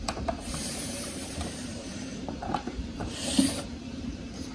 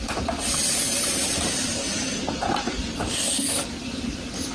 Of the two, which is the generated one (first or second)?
first